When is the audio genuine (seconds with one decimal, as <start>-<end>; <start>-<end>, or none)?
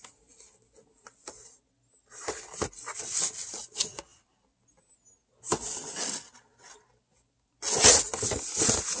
0.0-9.0